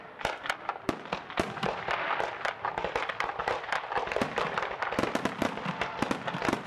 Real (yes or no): no